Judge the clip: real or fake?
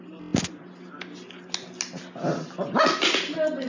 real